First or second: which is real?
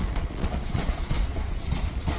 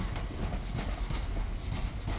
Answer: second